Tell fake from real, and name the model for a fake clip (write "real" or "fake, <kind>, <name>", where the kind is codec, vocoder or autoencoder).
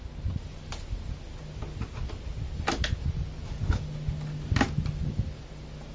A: real